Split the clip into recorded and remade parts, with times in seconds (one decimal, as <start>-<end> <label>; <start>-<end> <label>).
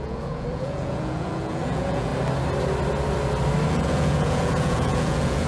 0.0-2.1 remade; 2.1-3.7 recorded; 3.7-5.5 remade